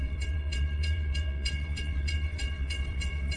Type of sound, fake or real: fake